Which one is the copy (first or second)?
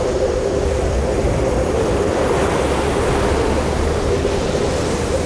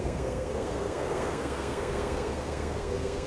second